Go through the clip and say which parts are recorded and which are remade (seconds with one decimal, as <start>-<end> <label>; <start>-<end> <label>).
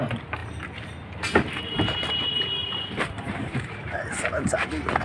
0.0-2.6 recorded; 2.6-4.2 remade; 4.2-5.0 recorded